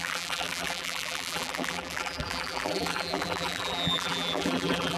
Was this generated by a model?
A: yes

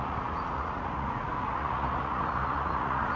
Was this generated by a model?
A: yes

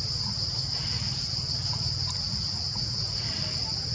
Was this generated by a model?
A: yes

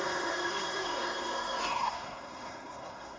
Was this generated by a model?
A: yes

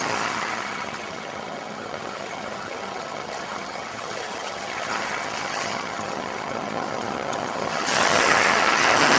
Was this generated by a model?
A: yes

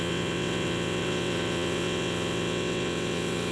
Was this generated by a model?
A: yes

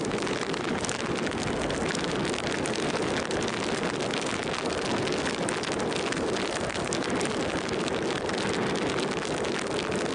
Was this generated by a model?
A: no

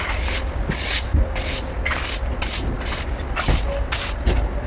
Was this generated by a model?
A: no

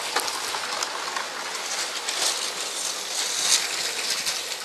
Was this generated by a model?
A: no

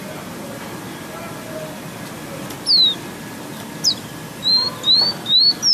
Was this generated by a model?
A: no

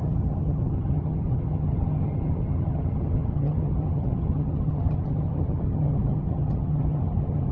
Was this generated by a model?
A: yes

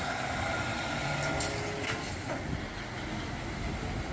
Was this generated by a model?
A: no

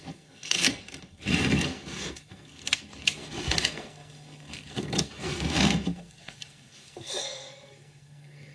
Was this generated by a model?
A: yes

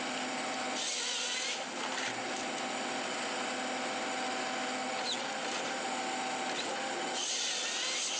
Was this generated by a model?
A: no